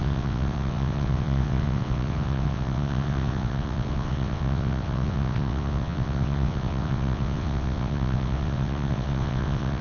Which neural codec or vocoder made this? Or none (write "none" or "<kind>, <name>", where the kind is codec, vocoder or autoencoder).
vocoder, WaveNeXt